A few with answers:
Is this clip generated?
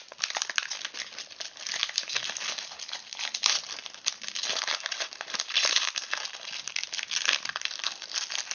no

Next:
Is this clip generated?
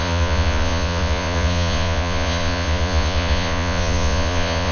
yes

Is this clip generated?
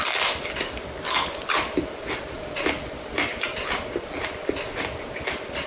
no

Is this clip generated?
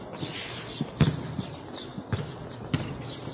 no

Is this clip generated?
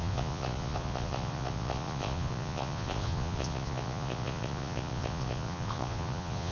yes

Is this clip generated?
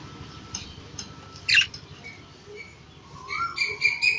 no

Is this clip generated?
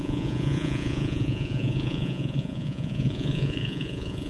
yes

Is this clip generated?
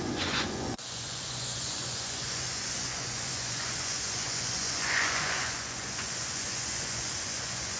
yes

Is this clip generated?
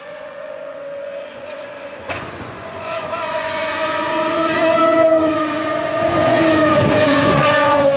yes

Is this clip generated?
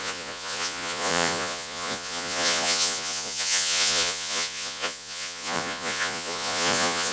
yes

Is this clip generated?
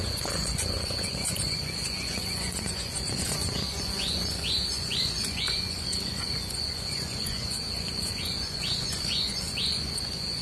yes